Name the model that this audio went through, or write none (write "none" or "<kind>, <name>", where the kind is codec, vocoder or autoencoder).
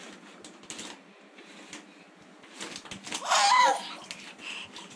none